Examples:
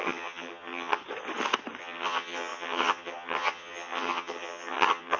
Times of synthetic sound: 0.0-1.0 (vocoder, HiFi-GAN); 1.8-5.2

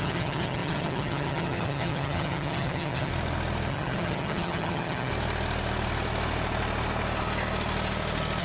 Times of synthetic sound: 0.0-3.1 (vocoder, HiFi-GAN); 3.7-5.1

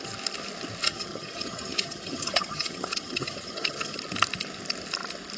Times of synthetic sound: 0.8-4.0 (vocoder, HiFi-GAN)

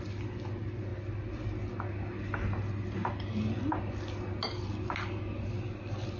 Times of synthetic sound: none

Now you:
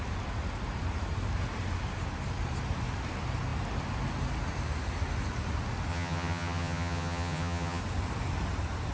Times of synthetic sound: 5.9-7.8 (vocoder, HiFi-GAN)

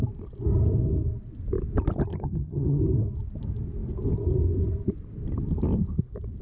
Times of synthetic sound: 2.1-2.8 (vocoder, HiFi-GAN)